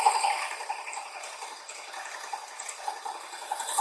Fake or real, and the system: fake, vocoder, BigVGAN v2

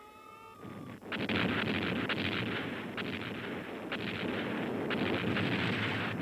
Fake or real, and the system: real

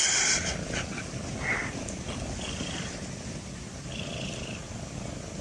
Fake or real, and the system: real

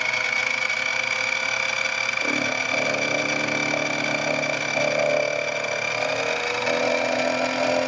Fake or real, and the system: real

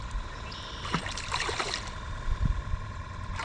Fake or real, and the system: fake, vocoder, BigVGAN v2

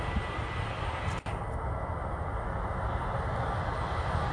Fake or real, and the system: real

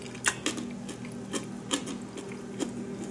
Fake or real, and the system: real